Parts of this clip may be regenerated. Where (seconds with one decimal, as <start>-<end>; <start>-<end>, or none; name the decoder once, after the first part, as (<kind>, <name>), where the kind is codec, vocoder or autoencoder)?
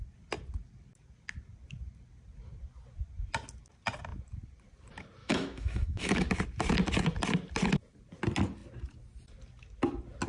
5.2-6.3 (autoencoder, DAC-VAE)